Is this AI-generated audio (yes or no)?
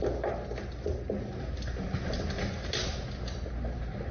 no